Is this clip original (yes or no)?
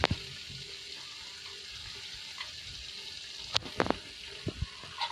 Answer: yes